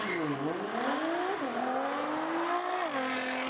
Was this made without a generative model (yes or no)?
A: yes